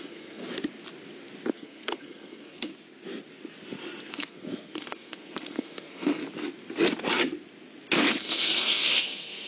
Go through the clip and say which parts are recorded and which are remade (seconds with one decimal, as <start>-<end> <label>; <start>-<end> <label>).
0.0-0.4 remade; 0.4-1.5 recorded; 1.5-2.7 remade; 2.7-4.1 recorded; 4.1-6.2 remade; 6.2-8.0 recorded; 8.0-9.5 remade

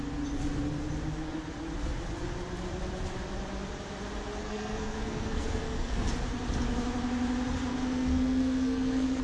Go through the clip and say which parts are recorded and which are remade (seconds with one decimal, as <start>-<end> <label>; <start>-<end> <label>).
0.0-4.4 recorded; 4.4-6.1 remade; 6.1-7.7 recorded; 7.7-9.2 remade

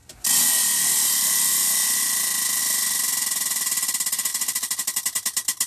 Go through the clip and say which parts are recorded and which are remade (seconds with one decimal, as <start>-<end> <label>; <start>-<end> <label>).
0.0-5.7 recorded

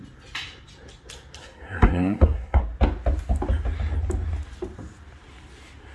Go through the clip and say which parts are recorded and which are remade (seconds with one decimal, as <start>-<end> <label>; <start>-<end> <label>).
0.0-1.4 recorded; 1.4-2.6 remade; 2.6-5.9 recorded

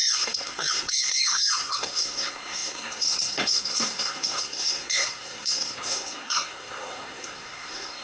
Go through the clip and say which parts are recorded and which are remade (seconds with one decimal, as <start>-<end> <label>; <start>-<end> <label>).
0.0-8.0 remade

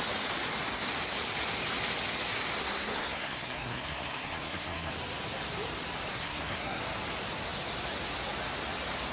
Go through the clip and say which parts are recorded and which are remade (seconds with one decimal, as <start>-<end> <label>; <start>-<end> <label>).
0.0-2.6 recorded; 2.6-4.9 remade; 4.9-6.1 recorded; 6.1-6.8 remade; 6.8-9.1 recorded